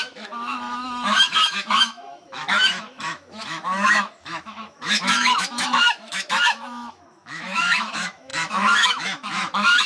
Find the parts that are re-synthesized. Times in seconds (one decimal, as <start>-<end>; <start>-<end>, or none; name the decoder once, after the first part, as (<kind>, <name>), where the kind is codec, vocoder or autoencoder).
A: 0.0-9.9 (autoencoder, DAC-VAE)